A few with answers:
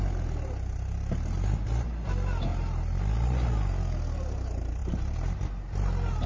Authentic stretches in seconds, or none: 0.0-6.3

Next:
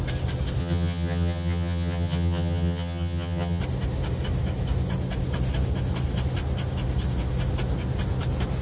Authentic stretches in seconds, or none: 0.0-0.6; 3.6-8.6